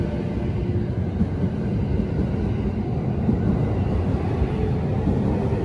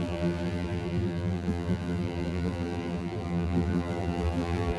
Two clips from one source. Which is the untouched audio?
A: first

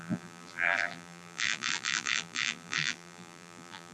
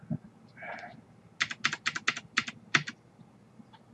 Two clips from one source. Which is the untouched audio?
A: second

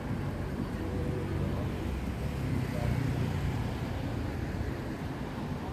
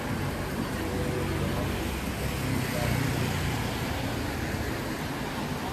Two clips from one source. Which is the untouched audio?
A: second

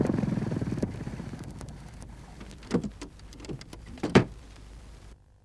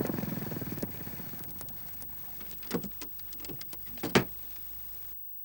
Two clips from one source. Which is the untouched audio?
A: second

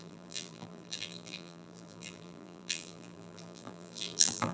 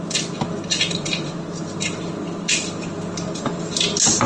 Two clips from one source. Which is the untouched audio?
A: second